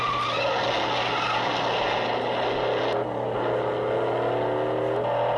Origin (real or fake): real